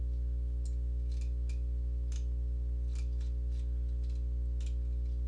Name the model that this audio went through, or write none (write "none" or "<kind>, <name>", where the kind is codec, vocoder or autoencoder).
none